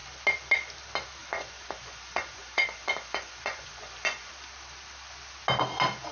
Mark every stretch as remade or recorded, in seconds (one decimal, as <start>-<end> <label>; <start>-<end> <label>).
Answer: 0.0-1.2 recorded; 1.2-4.3 remade; 4.3-6.1 recorded